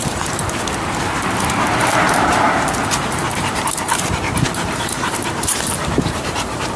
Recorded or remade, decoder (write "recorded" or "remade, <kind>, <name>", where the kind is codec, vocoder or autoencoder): remade, vocoder, BigVGAN v2